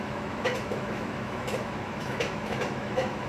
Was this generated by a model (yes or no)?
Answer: yes